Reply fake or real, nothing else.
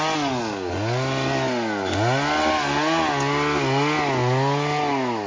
real